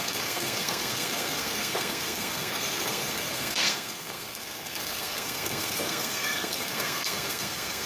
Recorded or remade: remade